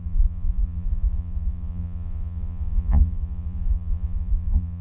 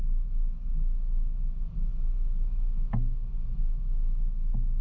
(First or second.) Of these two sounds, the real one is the second